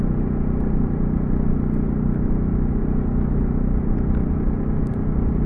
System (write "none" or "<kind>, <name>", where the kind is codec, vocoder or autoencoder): none